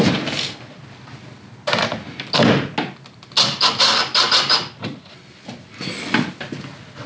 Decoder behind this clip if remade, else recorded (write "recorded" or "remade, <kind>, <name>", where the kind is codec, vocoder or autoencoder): recorded